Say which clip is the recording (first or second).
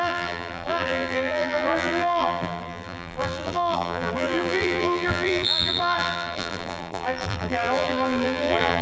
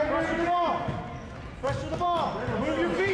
second